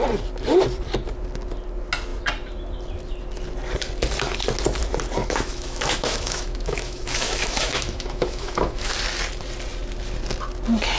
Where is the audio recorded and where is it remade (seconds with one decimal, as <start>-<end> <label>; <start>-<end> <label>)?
0.0-5.2 recorded; 5.2-8.9 remade; 8.9-11.0 recorded